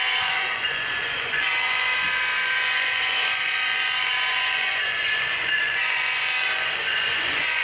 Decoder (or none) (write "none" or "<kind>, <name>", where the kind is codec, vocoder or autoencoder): vocoder, Vocos